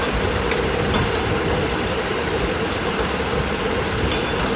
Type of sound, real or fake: real